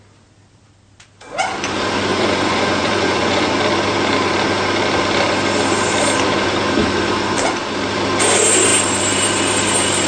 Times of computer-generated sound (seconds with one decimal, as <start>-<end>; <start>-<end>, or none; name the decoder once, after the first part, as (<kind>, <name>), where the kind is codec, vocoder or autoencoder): 2.1-3.5 (vocoder, Vocos)

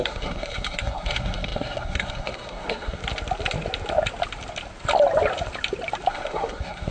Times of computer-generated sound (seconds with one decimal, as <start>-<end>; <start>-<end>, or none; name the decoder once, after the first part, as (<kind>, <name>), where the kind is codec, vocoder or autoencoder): 0.0-3.0 (codec, SNAC); 6.1-6.9